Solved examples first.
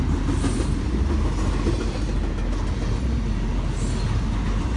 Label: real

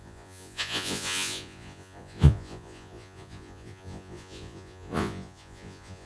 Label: fake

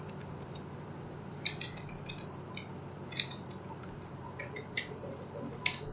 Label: fake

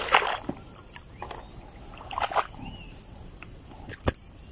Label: fake